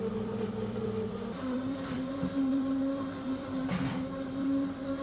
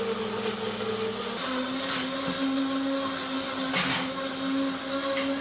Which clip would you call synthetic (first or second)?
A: first